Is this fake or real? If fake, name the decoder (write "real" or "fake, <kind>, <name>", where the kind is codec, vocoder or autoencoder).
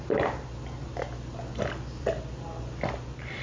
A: fake, vocoder, BigVGAN v2